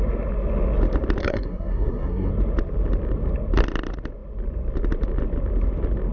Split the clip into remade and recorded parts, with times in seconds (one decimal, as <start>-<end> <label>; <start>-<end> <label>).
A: 0.0-1.2 recorded; 1.2-2.3 remade; 2.3-6.1 recorded